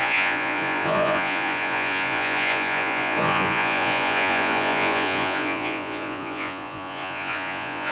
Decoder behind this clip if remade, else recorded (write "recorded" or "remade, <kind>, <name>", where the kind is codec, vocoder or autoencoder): remade, vocoder, Vocos